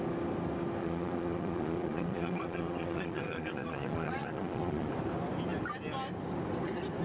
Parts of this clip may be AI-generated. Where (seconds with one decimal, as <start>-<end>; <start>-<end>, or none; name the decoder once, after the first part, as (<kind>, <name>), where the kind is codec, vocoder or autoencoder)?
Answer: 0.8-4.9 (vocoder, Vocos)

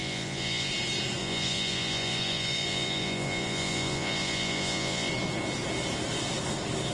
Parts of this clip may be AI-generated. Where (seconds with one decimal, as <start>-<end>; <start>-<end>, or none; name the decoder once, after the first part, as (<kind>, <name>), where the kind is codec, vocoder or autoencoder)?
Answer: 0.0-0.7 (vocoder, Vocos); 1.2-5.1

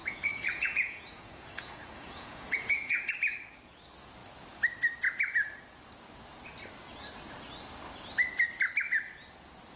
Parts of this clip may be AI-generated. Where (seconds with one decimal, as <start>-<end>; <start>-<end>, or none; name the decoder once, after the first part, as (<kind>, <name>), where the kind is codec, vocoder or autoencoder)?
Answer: 0.0-3.1 (vocoder, Vocos)

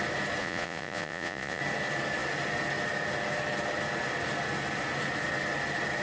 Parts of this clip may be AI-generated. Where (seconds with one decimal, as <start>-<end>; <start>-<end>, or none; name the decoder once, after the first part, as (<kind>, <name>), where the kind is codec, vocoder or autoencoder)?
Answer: 0.4-1.6 (vocoder, Vocos)